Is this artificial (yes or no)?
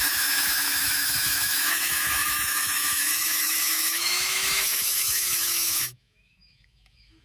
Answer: yes